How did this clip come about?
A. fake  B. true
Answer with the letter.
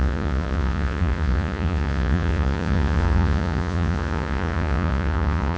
A